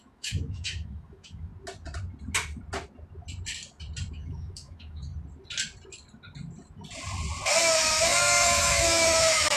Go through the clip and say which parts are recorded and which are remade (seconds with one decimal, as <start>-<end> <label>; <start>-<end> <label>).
0.0-1.5 remade; 1.5-4.1 recorded; 4.1-5.1 remade; 5.1-7.6 recorded; 7.6-9.6 remade